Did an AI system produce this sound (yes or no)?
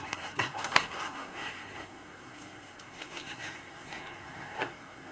yes